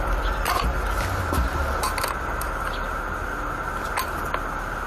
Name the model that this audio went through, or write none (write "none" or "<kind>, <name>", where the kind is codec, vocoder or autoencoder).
none